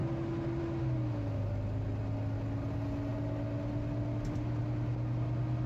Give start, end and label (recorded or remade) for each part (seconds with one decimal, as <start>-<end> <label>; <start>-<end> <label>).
0.0-5.7 recorded